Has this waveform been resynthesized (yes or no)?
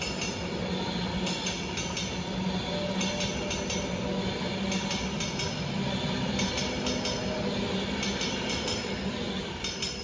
no